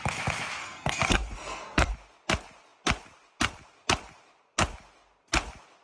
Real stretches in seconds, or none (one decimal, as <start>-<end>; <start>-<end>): 0.0-0.6; 1.9-5.8